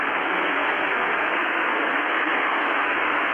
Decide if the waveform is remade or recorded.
remade